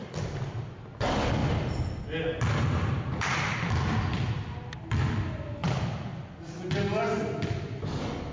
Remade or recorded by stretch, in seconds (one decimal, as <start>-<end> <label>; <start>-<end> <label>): 0.0-1.4 recorded; 1.4-2.0 remade; 2.0-5.6 recorded; 5.6-6.6 remade; 6.6-8.3 recorded